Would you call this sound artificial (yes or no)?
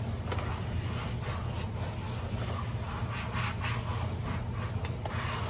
no